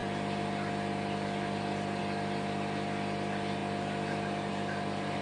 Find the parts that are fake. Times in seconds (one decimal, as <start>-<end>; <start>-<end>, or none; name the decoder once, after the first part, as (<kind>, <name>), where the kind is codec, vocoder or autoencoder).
none